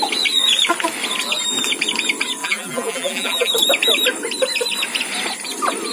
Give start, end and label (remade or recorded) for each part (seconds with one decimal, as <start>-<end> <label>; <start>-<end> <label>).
0.0-2.4 recorded; 2.4-3.5 remade; 3.5-5.9 recorded